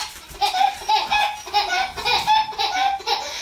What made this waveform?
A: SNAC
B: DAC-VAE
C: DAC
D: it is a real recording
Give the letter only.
D